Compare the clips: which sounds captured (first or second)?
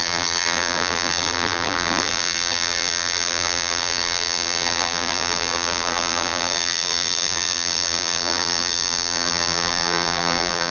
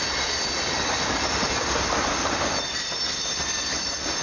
second